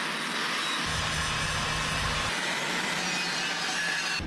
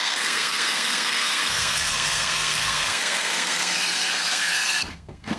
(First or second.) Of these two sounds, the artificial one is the second